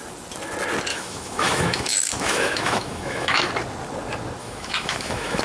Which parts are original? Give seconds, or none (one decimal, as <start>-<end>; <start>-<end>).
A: 0.0-0.9; 3.5-4.4